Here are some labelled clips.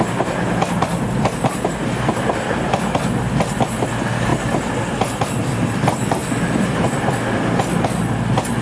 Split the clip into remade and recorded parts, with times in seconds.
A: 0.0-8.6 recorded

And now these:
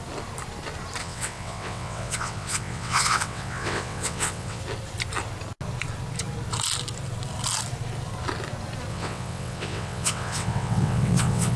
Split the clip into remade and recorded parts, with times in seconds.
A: 0.0-1.0 recorded; 1.0-4.6 remade; 4.6-8.9 recorded; 8.9-11.6 remade